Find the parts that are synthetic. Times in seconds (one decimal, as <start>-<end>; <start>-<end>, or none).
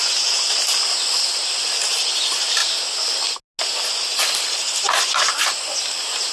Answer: none